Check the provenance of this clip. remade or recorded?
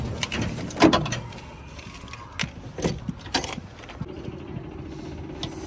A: recorded